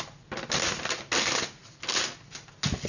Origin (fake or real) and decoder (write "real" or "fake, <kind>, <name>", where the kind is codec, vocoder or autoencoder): real